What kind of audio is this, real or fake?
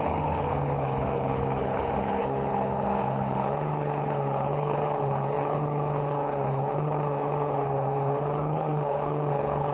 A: fake